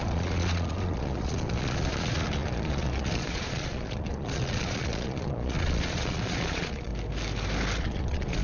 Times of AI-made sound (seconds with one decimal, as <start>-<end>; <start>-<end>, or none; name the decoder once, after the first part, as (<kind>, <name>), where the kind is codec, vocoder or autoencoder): 0.0-6.9 (vocoder, Vocos); 7.8-8.4